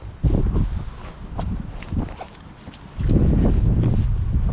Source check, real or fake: real